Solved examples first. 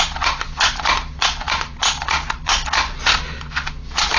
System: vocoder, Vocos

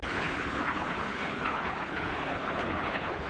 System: codec, HILCodec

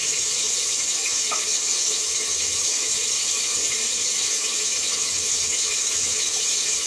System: autoencoder, DAC-VAE